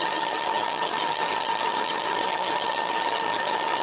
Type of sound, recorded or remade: remade